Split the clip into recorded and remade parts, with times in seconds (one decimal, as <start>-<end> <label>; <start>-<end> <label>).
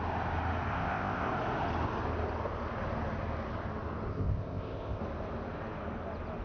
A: 0.0-0.7 recorded; 0.7-1.3 remade; 1.3-4.1 recorded; 4.1-5.0 remade; 5.0-6.4 recorded